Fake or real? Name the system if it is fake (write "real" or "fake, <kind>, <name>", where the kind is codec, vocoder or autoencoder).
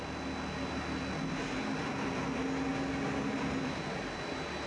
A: real